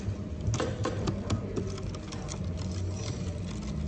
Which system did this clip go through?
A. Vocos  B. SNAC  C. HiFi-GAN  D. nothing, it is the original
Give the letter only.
D